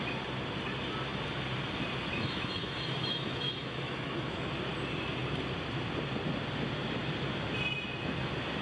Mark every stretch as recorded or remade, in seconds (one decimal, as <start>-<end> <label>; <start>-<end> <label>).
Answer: 0.0-2.1 recorded; 2.1-4.5 remade; 4.5-8.6 recorded